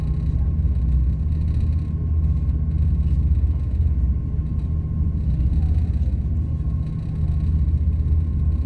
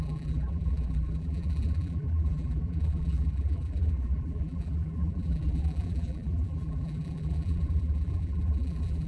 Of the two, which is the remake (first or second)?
second